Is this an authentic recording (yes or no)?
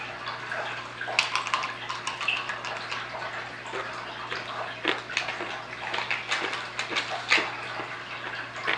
yes